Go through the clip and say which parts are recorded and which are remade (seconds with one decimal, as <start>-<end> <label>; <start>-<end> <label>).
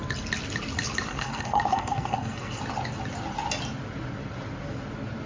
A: 0.0-1.1 recorded; 1.1-2.6 remade; 2.6-5.3 recorded